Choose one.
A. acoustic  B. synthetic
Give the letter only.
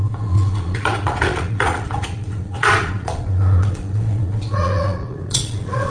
B